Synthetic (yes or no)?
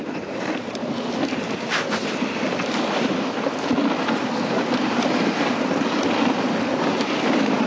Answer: yes